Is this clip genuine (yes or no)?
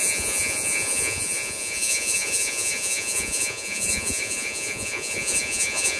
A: no